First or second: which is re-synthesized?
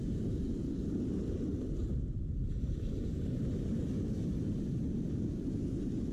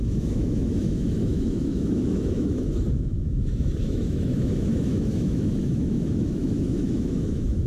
second